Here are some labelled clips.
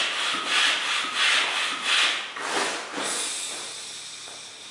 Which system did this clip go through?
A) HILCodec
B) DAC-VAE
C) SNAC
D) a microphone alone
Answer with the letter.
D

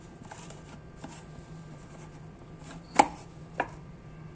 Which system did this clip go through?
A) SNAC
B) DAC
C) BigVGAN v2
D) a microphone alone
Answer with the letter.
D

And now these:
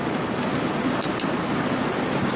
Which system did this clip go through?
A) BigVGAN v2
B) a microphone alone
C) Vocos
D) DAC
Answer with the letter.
B